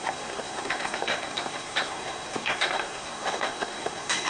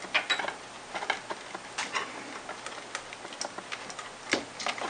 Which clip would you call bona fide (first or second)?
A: second